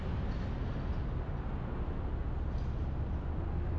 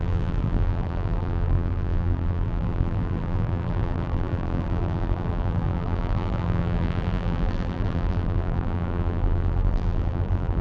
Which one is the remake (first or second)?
second